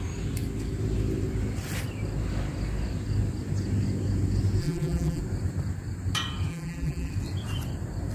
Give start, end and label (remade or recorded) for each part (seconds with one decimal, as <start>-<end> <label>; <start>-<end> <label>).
0.0-4.6 recorded; 4.6-5.2 remade; 5.2-6.5 recorded; 6.5-7.1 remade; 7.1-8.1 recorded